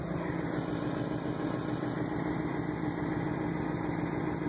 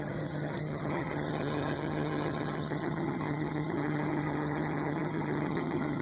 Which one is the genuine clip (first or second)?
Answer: first